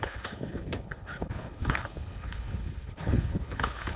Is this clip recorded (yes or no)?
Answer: no